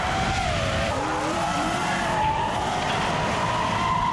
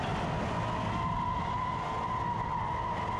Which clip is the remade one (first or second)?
first